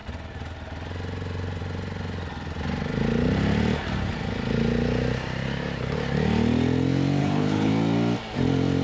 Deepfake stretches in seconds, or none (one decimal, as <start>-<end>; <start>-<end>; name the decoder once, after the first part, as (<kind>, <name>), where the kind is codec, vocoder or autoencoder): 7.2-7.7 (codec, HILCodec)